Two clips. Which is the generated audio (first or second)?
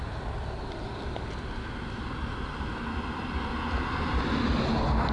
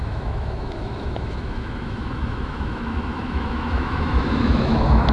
second